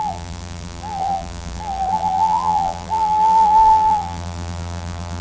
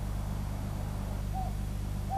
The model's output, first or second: first